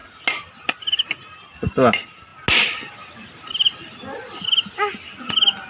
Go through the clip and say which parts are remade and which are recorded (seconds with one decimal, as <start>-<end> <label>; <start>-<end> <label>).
0.0-5.7 recorded